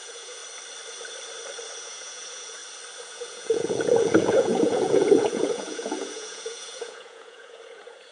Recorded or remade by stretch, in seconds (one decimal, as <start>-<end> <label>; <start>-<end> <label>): 0.0-0.4 remade; 0.4-1.8 recorded; 1.8-2.6 remade; 2.6-3.1 recorded; 3.1-8.1 remade

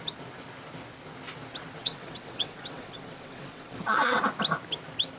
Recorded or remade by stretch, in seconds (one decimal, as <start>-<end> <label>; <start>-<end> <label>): 0.0-1.8 recorded; 1.8-4.2 remade; 4.2-5.2 recorded

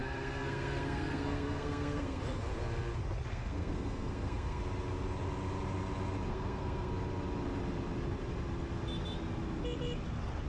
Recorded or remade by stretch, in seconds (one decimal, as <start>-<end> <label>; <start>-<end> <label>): 0.0-2.2 remade; 2.2-3.3 recorded; 3.3-4.6 remade; 4.6-6.3 recorded; 6.3-6.9 remade; 6.9-10.5 recorded

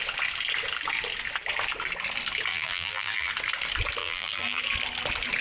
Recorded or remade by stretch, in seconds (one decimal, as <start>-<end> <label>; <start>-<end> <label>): 0.0-2.5 recorded; 2.5-3.3 remade; 3.3-4.0 recorded; 4.0-4.6 remade; 4.6-5.4 recorded

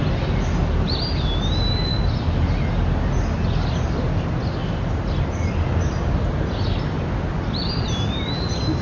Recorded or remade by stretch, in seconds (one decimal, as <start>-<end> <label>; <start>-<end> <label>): 0.0-8.8 recorded

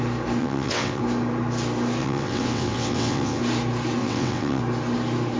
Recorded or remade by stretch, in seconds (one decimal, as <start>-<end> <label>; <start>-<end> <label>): 0.0-0.4 recorded; 0.4-1.0 remade; 1.0-2.0 recorded; 2.0-3.4 remade; 3.4-4.0 recorded; 4.0-4.6 remade; 4.6-5.4 recorded